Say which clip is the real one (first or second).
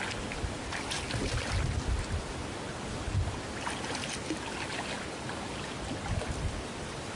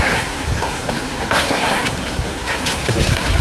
first